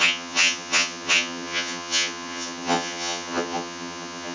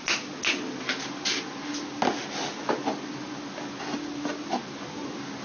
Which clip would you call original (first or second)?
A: second